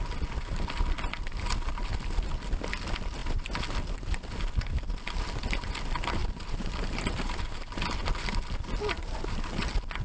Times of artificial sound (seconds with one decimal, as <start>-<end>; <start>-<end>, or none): 6.2-7.6; 9.0-9.6